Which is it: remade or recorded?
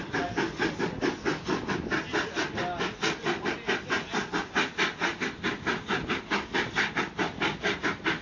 recorded